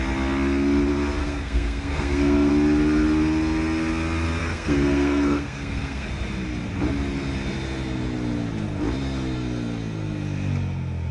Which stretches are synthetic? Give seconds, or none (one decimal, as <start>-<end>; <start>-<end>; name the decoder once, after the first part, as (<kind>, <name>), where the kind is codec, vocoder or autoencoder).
1.2-2.5 (codec, SNAC); 4.4-6.1